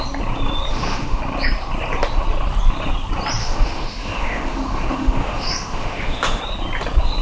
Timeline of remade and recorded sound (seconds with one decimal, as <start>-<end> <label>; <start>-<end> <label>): 0.0-0.7 recorded; 0.7-1.2 remade; 1.2-3.4 recorded; 3.4-6.4 remade; 6.4-7.2 recorded